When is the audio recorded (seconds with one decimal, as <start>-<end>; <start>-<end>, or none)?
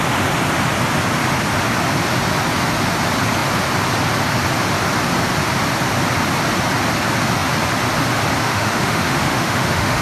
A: 0.0-8.4